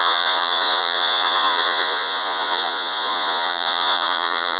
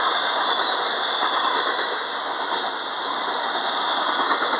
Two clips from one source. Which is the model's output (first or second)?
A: first